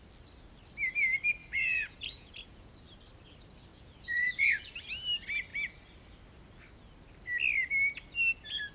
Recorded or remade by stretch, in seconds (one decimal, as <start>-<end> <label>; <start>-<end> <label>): 0.0-1.4 recorded; 1.4-2.7 remade; 2.7-3.7 recorded; 3.7-4.7 remade; 4.7-8.7 recorded